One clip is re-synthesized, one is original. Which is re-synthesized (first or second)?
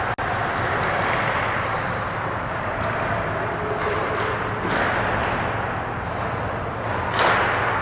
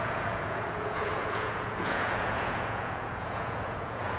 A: second